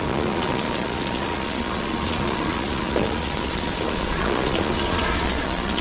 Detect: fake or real fake